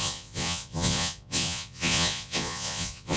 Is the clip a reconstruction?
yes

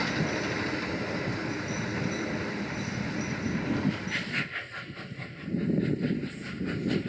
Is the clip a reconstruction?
no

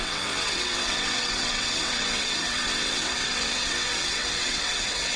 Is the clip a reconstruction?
yes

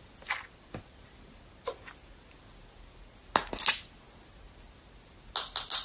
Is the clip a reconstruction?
no